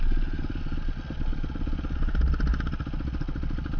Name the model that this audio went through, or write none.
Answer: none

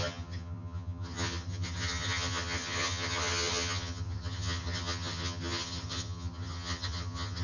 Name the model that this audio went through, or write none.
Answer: vocoder, HiFi-GAN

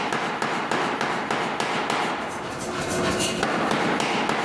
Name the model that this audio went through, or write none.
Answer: none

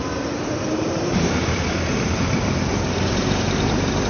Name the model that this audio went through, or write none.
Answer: vocoder, BigVGAN v2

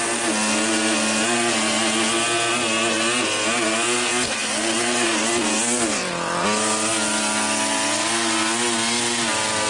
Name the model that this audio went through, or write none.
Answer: none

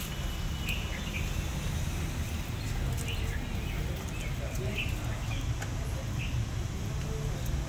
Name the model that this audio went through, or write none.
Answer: none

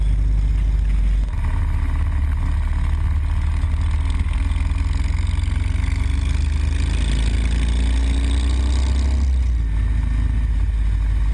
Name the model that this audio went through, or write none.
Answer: none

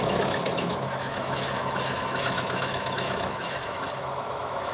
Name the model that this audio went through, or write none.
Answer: autoencoder, DAC-VAE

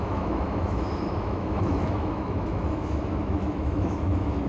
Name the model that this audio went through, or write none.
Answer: autoencoder, DAC-VAE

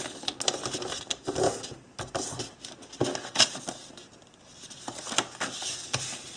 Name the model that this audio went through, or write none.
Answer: none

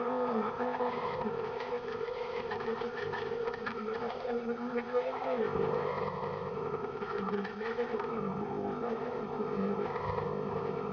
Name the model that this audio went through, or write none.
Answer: codec, ZipCodec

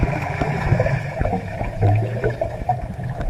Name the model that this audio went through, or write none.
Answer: autoencoder, DAC-VAE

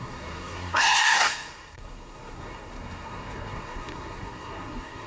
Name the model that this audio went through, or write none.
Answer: codec, SNAC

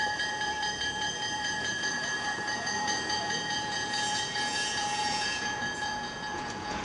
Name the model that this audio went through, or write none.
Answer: vocoder, Vocos